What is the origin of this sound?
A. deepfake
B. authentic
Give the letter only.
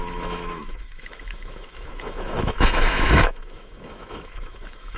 A